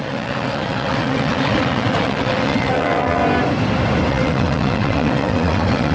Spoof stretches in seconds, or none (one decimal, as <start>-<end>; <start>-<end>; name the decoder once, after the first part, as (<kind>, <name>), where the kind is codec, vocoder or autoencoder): 0.0-3.2 (vocoder, WaveNeXt); 4.1-5.9